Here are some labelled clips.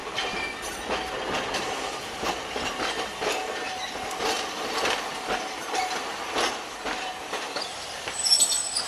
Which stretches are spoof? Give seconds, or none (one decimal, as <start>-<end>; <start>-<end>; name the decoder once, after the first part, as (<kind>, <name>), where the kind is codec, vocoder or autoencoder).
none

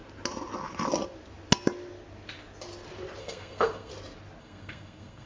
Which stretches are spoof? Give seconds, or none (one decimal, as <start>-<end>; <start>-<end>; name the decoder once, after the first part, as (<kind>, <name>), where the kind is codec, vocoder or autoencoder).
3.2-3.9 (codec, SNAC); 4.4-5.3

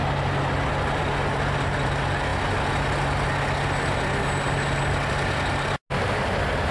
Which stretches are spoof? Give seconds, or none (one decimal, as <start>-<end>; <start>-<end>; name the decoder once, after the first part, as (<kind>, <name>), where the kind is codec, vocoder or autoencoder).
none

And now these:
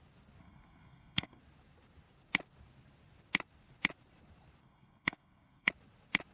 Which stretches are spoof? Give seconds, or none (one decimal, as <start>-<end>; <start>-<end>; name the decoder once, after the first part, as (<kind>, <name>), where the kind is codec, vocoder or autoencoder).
0.4-1.4 (codec, SNAC); 4.6-5.7

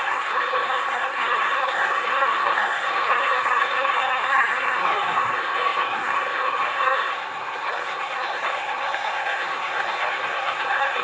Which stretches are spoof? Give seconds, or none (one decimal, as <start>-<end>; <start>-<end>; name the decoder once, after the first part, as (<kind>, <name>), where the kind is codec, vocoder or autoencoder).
0.0-11.0 (codec, SNAC)

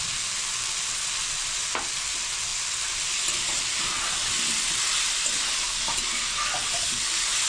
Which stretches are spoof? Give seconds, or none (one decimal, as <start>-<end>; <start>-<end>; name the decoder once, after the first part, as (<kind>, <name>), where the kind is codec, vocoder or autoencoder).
none

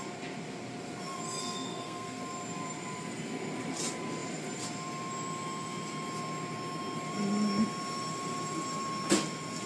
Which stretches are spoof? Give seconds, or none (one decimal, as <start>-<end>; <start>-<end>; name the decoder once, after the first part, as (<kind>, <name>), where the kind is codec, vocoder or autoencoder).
1.4-2.2 (codec, SNAC)